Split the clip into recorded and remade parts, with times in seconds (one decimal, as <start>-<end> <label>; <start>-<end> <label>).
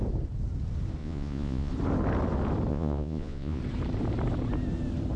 0.0-1.0 recorded; 1.0-1.7 remade; 1.7-2.7 recorded; 2.7-3.6 remade; 3.6-5.2 recorded